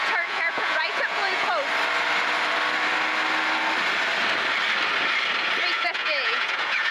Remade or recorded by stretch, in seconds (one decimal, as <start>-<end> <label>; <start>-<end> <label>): 0.0-1.5 remade; 1.5-5.6 recorded; 5.6-6.9 remade